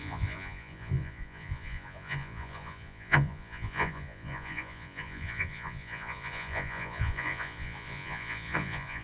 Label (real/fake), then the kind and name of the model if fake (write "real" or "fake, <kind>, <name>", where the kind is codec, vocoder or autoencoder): fake, vocoder, Vocos